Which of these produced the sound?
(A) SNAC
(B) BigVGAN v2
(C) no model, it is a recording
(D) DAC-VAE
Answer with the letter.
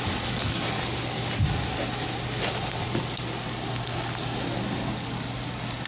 C